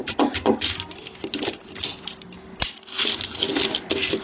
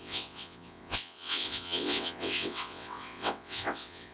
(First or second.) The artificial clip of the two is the second